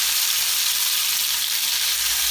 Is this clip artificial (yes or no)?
yes